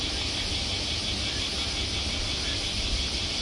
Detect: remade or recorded recorded